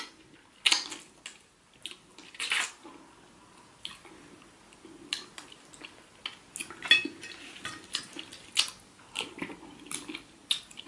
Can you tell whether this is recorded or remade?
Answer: recorded